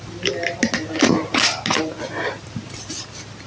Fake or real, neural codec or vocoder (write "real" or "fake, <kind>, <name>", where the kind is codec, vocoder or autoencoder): real